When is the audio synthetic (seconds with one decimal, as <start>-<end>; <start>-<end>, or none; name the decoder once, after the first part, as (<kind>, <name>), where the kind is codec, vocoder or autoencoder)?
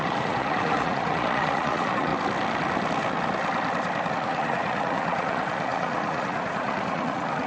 0.0-2.1 (vocoder, Vocos); 4.1-7.5